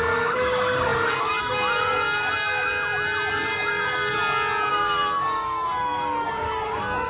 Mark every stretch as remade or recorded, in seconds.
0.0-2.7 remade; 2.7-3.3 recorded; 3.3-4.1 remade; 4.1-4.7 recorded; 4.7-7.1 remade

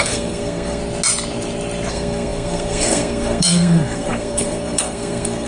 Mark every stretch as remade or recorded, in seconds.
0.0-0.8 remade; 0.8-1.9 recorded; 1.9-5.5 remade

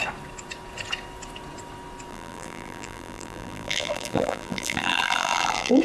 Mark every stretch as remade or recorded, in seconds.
0.0-2.1 recorded; 2.1-5.8 remade